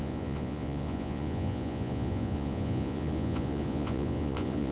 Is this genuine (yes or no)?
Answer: no